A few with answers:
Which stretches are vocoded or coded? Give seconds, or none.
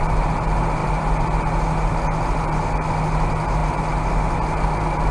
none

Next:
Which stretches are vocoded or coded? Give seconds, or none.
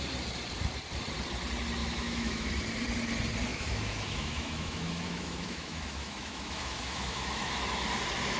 1.8-2.5; 3.5-7.5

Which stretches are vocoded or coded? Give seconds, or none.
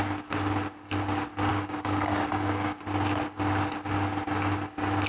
1.5-2.8